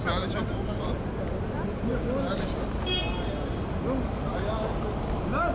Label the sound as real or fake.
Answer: real